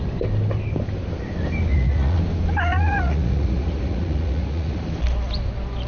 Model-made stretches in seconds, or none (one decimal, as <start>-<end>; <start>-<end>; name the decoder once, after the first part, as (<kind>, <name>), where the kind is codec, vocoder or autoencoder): 1.7-2.2 (vocoder, Vocos); 2.7-4.9